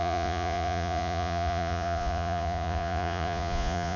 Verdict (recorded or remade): remade